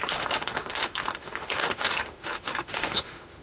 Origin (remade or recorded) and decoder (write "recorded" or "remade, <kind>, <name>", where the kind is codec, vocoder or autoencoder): remade, autoencoder, DAC-VAE